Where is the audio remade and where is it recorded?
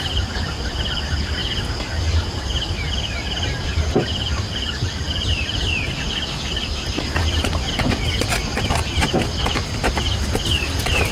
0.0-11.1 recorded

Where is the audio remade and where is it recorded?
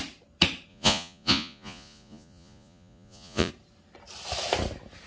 0.0-0.7 recorded; 0.7-3.5 remade; 3.5-5.1 recorded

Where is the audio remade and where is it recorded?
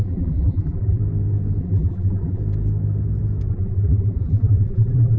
0.0-1.0 remade; 1.0-1.6 recorded; 1.6-2.4 remade; 2.4-3.5 recorded; 3.5-5.2 remade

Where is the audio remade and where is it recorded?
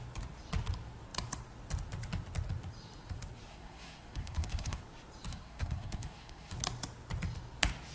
0.0-3.5 recorded; 3.5-4.8 remade; 4.8-5.3 recorded; 5.3-6.5 remade; 6.5-7.9 recorded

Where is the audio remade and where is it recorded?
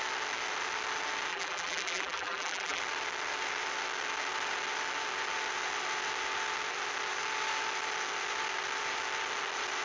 0.0-1.3 recorded; 1.3-2.8 remade; 2.8-9.8 recorded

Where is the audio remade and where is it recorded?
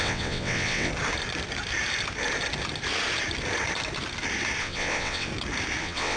0.0-0.9 remade; 0.9-4.6 recorded; 4.6-5.3 remade; 5.3-5.8 recorded; 5.8-6.2 remade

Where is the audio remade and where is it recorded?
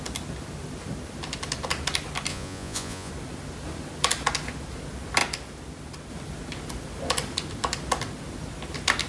0.0-2.3 recorded; 2.3-3.1 remade; 3.1-9.1 recorded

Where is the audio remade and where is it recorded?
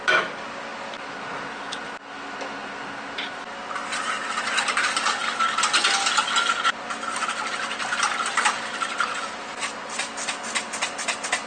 0.0-5.2 recorded; 5.2-10.4 remade; 10.4-11.5 recorded